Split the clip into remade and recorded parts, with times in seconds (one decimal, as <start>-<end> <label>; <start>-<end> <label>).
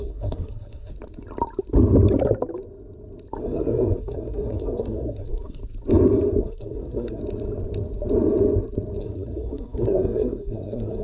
0.0-0.9 remade; 0.9-3.4 recorded; 3.4-5.6 remade; 5.6-6.4 recorded; 6.4-7.2 remade; 7.2-9.0 recorded; 9.0-11.0 remade